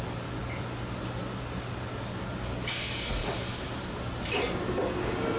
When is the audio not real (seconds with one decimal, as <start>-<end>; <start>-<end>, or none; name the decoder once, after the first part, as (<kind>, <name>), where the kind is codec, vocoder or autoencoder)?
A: none